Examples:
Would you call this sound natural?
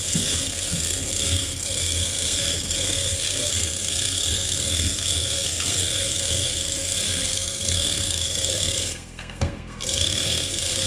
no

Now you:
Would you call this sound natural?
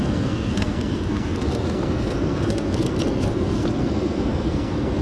no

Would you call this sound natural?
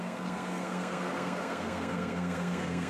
no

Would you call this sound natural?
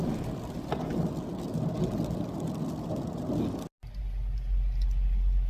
yes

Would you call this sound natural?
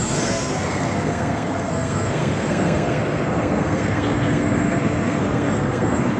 no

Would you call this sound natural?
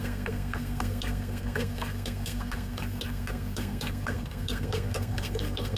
no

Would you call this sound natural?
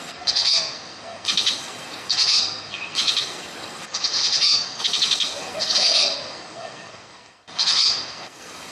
no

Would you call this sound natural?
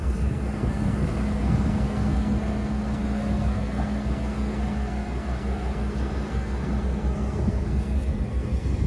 no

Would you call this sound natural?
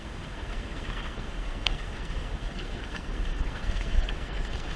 no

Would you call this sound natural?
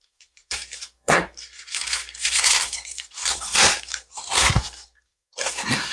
no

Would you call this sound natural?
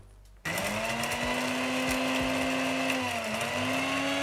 yes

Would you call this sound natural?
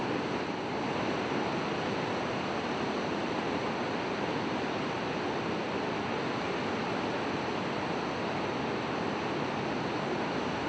yes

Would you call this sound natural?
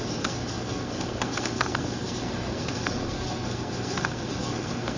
no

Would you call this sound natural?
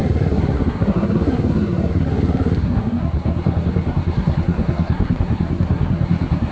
no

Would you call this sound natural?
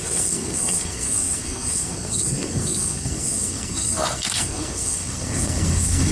no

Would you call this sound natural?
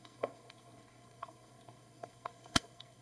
no